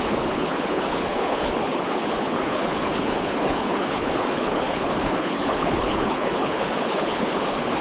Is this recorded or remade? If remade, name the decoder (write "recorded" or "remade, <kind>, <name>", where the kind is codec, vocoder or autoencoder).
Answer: remade, codec, HILCodec